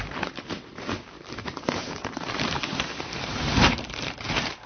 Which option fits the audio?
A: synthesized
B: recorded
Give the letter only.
A